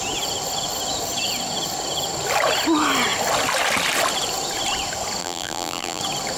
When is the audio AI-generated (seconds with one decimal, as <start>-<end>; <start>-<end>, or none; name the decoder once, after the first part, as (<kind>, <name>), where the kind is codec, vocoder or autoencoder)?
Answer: 5.2-6.0 (vocoder, BigVGAN v2)